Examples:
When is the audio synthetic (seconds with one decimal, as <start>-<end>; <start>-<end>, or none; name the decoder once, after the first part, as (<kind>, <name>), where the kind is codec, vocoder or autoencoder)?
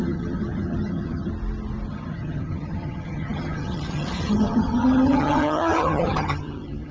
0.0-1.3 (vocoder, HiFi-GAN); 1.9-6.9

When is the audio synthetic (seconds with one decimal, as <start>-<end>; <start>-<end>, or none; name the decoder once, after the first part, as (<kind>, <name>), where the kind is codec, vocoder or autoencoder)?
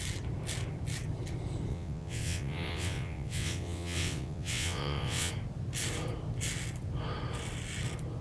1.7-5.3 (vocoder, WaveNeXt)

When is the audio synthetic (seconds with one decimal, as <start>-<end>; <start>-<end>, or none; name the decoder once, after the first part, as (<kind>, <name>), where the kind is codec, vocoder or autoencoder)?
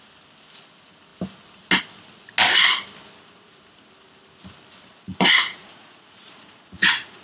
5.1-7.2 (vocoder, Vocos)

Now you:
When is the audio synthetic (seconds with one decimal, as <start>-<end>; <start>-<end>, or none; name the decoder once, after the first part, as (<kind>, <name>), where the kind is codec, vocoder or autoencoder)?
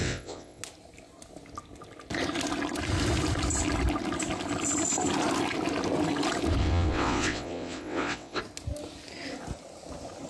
0.0-0.6 (vocoder, WaveNeXt); 6.6-8.4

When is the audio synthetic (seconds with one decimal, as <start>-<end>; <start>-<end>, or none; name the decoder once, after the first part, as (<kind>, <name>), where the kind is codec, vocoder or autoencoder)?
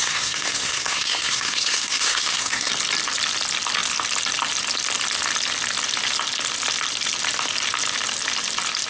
0.0-2.7 (codec, SNAC)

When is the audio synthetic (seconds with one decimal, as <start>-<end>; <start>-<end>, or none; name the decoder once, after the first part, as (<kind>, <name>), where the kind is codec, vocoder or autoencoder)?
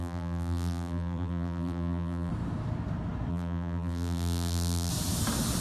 0.0-2.3 (vocoder, BigVGAN v2); 3.3-4.9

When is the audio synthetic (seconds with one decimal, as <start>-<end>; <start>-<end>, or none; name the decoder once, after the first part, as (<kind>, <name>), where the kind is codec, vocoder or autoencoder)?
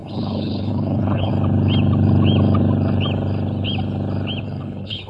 0.0-1.3 (codec, HILCodec); 4.4-5.1